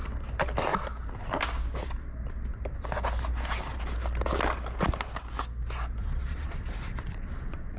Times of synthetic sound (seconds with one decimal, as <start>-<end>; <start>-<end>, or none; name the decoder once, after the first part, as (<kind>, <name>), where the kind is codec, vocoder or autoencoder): 6.0-7.8 (vocoder, Vocos)